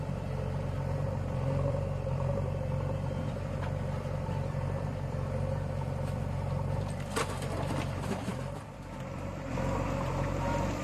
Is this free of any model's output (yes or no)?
no